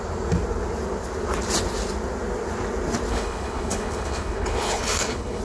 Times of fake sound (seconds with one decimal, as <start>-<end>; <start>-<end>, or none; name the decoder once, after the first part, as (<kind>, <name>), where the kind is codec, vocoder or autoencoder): 3.1-5.4 (codec, HILCodec)